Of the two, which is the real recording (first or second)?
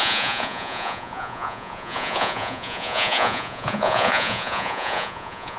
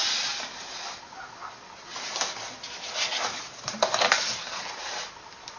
second